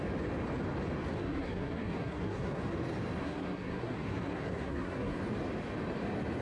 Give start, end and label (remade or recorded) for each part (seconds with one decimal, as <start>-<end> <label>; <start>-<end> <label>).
0.0-1.2 recorded; 1.2-2.6 remade; 2.6-3.2 recorded; 3.2-5.2 remade; 5.2-6.4 recorded